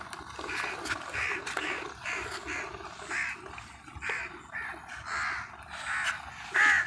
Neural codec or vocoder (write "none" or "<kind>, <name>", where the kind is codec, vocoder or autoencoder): none